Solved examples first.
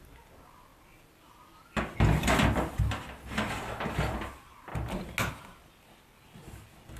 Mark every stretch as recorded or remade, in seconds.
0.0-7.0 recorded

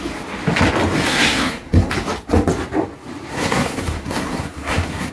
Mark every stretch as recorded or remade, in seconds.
0.0-1.1 recorded; 1.1-1.9 remade; 1.9-3.3 recorded; 3.3-5.1 remade